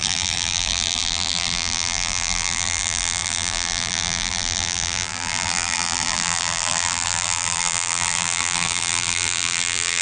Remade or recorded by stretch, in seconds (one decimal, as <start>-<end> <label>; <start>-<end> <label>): 0.0-10.0 remade